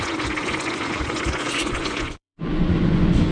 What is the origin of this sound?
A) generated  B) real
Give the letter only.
A